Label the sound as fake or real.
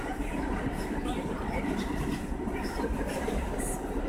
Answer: real